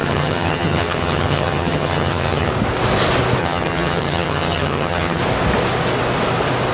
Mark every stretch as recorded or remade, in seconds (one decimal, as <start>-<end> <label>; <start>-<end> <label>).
0.0-2.5 remade; 2.5-3.4 recorded; 3.4-5.2 remade; 5.2-6.7 recorded